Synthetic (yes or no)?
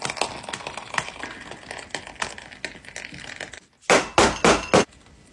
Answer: no